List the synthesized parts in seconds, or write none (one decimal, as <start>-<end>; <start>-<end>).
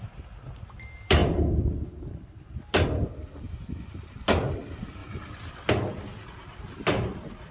none